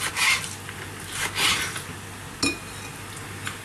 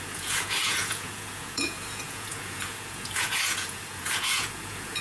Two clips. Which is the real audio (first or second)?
first